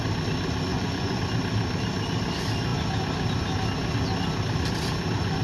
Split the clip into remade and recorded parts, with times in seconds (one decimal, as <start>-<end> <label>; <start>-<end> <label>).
0.0-0.7 recorded; 0.7-1.2 remade; 1.2-5.4 recorded